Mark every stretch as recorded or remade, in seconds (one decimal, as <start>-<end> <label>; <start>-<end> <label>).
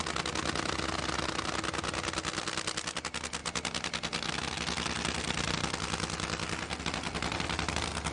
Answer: 0.0-8.1 recorded